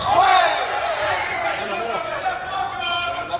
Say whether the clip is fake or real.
fake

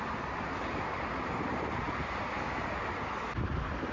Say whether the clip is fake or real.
real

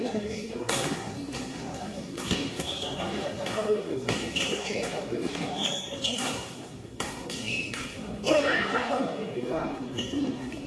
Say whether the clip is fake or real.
fake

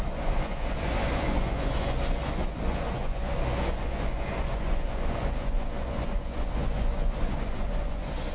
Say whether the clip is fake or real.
fake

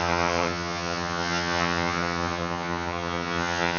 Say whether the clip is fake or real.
fake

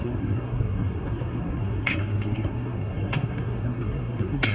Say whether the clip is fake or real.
fake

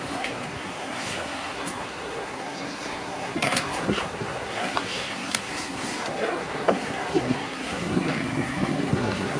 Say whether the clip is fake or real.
fake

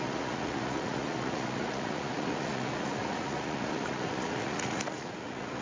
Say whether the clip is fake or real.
fake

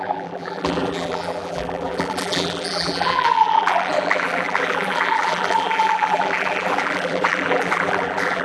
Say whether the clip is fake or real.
fake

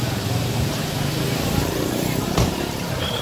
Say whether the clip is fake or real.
fake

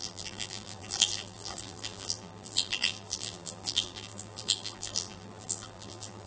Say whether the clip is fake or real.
fake